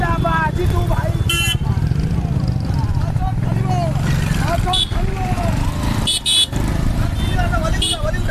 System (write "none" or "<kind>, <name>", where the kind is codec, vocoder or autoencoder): none